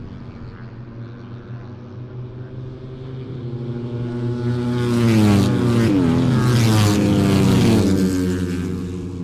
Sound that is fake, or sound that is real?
real